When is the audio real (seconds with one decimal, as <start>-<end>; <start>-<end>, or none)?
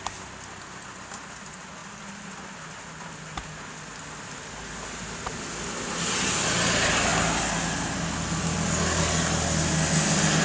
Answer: 0.0-10.4